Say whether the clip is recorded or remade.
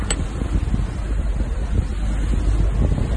recorded